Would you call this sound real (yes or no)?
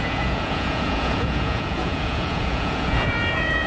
no